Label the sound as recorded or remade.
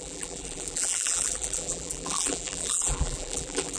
remade